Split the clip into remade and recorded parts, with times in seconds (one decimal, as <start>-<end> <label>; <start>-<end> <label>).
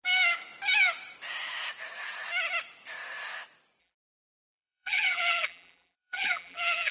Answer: 0.0-3.8 recorded; 3.8-6.9 remade